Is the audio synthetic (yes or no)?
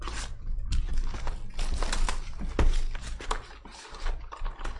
no